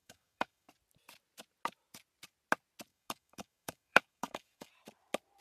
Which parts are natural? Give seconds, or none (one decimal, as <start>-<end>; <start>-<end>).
0.7-2.9; 4.7-5.4